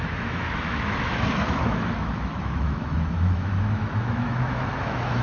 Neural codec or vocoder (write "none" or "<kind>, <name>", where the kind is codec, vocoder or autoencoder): autoencoder, DAC-VAE